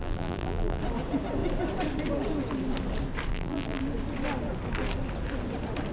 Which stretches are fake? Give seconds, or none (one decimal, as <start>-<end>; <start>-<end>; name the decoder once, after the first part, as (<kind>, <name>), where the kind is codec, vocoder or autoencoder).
0.0-0.8 (vocoder, BigVGAN v2); 3.3-3.8